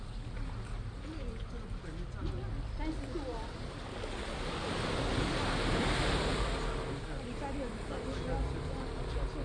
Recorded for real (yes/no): yes